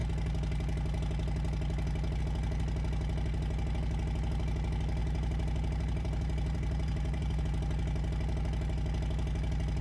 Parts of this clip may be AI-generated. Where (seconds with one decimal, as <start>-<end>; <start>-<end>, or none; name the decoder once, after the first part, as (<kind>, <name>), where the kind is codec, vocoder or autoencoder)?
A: 5.0-7.4 (vocoder, BigVGAN v2)